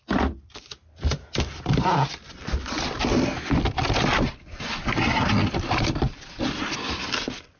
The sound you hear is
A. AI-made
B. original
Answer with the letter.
B